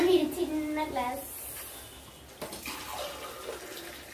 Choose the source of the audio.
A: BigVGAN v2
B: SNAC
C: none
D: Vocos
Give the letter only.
C